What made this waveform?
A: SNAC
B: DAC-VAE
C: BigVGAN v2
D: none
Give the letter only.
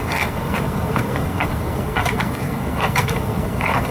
A